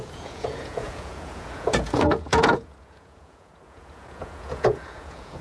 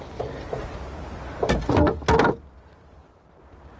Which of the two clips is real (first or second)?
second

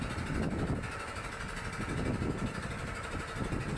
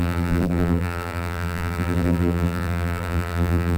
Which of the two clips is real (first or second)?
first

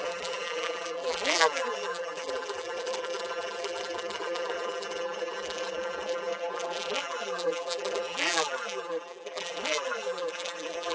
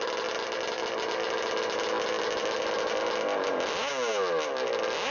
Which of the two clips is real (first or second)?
second